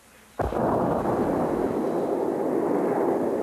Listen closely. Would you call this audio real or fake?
real